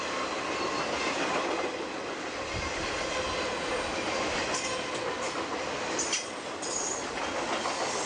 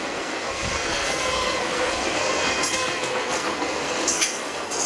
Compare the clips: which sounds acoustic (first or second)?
first